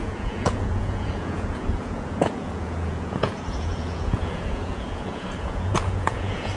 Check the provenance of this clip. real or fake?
fake